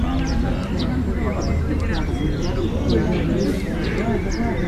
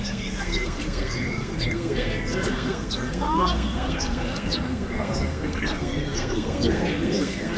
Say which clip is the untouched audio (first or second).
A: first